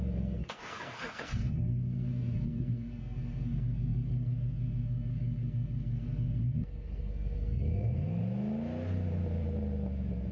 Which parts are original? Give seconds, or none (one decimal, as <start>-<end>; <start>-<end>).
8.2-10.3